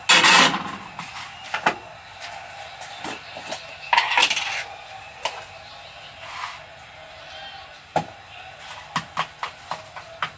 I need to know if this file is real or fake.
real